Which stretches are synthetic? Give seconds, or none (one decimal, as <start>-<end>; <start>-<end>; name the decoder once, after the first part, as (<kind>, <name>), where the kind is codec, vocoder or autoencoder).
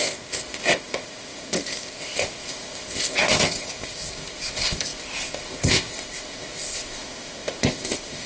0.0-8.3 (codec, ZipCodec)